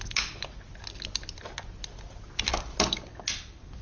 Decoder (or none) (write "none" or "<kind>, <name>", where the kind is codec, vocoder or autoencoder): none